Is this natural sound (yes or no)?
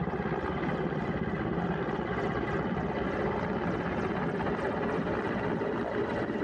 yes